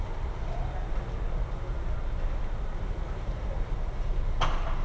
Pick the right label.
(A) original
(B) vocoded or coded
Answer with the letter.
A